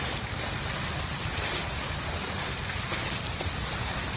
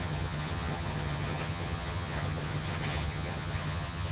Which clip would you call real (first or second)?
first